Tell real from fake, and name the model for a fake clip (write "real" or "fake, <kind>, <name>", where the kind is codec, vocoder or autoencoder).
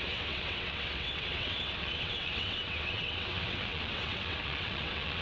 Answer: fake, vocoder, WaveNeXt